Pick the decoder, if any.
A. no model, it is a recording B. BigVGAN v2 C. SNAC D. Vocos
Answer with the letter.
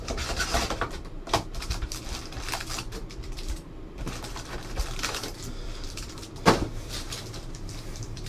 B